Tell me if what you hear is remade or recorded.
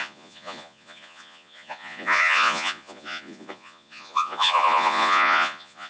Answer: remade